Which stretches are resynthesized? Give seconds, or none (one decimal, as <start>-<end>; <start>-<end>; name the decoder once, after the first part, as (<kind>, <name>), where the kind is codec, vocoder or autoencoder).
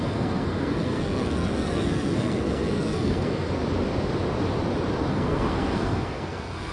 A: 0.0-3.6 (codec, SNAC); 5.1-6.7